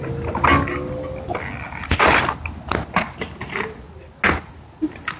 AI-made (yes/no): no